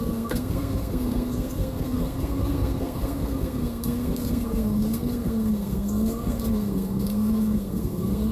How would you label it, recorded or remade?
remade